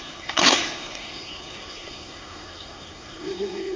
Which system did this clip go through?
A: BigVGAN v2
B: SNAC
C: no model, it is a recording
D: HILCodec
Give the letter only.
B